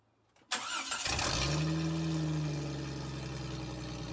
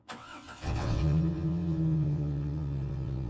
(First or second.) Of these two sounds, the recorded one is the first